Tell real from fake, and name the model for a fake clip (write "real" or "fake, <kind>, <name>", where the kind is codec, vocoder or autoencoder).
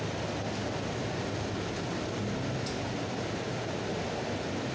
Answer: real